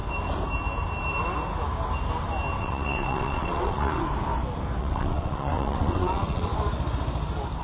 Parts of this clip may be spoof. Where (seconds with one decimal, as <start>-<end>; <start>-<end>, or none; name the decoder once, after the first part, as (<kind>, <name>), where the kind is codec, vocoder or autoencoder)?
2.6-4.0 (vocoder, WaveNeXt); 4.8-6.5